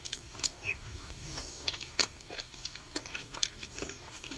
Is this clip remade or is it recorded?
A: remade